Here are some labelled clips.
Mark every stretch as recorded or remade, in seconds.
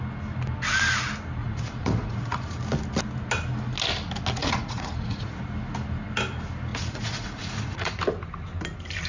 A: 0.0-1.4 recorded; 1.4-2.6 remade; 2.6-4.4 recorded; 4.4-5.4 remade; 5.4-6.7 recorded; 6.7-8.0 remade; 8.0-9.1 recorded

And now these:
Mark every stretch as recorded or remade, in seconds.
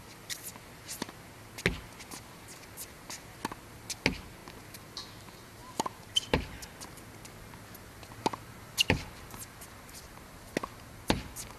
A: 0.0-5.6 recorded; 5.6-6.3 remade; 6.3-11.6 recorded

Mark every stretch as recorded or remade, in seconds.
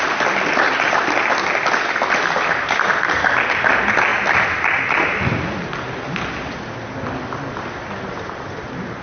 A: 0.0-9.0 recorded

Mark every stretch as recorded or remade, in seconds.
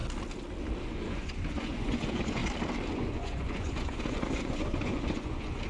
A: 0.0-0.8 recorded; 0.8-2.4 remade; 2.4-2.9 recorded; 2.9-5.7 remade